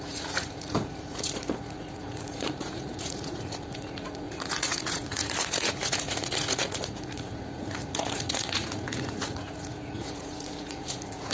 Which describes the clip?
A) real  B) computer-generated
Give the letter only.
B